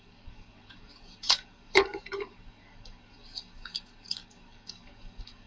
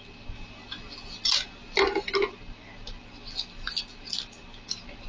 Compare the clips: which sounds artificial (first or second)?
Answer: first